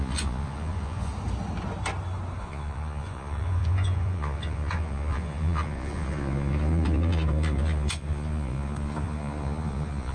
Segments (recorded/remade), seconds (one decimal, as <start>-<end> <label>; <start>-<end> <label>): 0.0-1.1 remade; 1.1-2.4 recorded; 2.4-10.1 remade